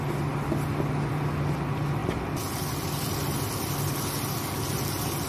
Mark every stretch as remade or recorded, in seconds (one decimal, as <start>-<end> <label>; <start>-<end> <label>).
0.0-5.3 recorded